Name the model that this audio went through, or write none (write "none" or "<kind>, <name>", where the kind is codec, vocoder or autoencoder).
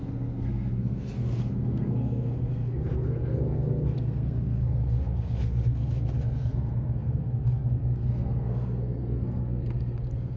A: codec, SNAC